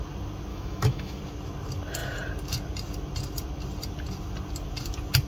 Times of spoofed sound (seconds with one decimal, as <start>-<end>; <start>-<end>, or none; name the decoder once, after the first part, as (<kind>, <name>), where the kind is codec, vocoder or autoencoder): 0.5-1.2 (autoencoder, DAC-VAE)